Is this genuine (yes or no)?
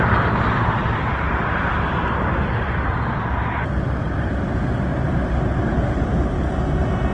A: yes